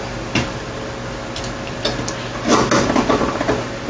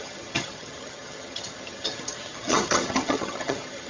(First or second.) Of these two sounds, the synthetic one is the second